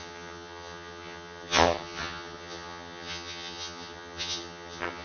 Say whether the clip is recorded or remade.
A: remade